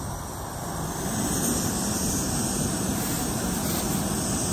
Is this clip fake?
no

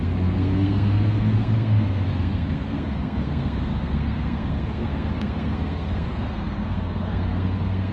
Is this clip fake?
yes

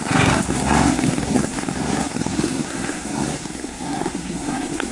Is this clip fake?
yes